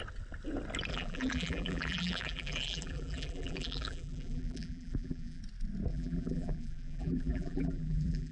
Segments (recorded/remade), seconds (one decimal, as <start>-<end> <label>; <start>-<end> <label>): 0.0-0.9 recorded; 0.9-5.4 remade; 5.4-5.9 recorded; 5.9-8.3 remade